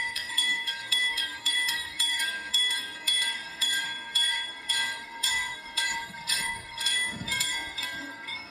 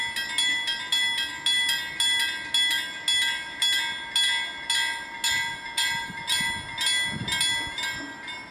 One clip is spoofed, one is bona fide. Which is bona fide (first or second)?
second